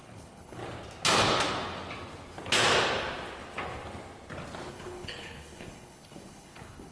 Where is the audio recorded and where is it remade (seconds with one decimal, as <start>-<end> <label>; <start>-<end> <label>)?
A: 0.0-0.6 remade; 0.6-4.7 recorded; 4.7-6.9 remade